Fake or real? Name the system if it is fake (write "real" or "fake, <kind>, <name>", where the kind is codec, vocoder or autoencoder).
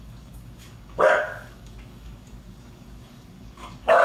fake, codec, DAC